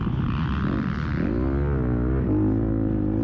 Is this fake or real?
real